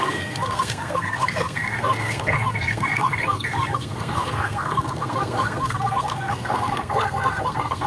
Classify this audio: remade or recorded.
remade